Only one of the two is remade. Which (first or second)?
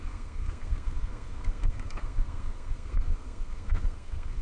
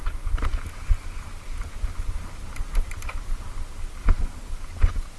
first